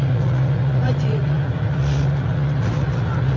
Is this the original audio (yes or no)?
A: no